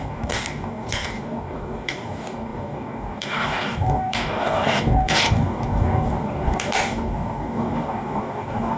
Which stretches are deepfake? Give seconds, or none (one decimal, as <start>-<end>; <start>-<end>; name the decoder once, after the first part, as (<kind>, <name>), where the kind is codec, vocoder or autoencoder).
0.0-8.8 (codec, DAC)